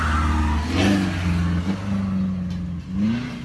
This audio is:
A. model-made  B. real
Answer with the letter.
B